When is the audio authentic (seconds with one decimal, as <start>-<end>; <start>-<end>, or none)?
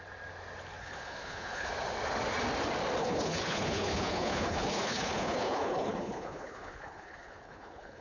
0.0-0.8; 1.7-3.0